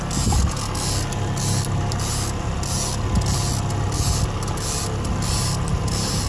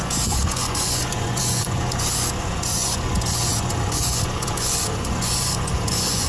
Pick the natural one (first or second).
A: first